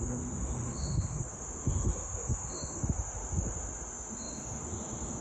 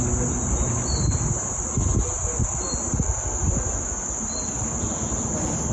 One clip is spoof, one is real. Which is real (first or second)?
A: second